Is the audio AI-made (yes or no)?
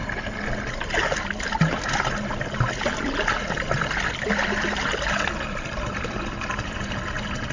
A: no